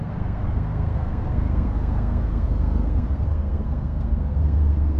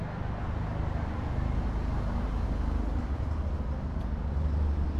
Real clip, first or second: second